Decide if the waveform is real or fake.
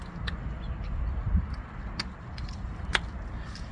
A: real